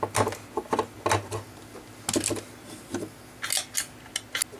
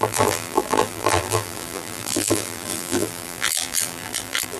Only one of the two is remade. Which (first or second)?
second